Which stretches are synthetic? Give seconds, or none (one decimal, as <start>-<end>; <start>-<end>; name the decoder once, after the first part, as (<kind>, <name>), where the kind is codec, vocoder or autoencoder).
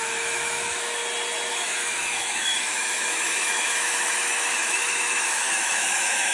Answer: 0.0-1.0 (autoencoder, DAC-VAE); 1.5-6.3